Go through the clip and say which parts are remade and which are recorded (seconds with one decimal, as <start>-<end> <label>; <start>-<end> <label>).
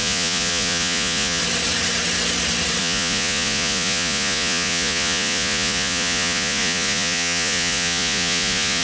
0.0-1.4 remade; 1.4-2.8 recorded; 2.8-8.8 remade